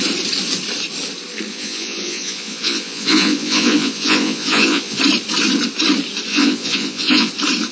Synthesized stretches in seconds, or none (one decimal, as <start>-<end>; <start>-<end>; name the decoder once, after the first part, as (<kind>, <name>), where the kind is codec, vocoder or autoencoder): 1.5-5.0 (vocoder, Vocos); 6.3-7.3